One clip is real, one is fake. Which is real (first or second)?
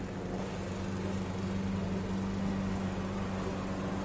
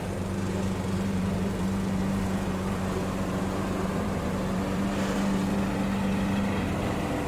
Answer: first